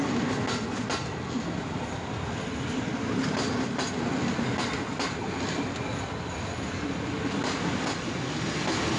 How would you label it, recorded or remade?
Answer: recorded